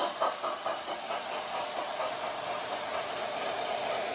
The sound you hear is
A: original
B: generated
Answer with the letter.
A